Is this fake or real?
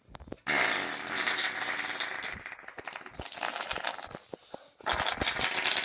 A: real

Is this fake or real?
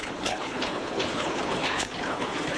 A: fake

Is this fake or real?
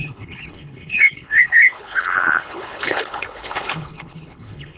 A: fake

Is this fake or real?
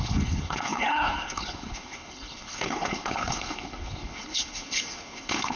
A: fake